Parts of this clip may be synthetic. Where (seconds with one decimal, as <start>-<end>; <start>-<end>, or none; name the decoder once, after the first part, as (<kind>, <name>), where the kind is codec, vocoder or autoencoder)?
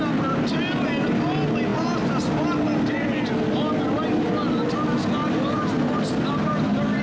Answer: none